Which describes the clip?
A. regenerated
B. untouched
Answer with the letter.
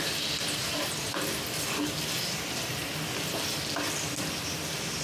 B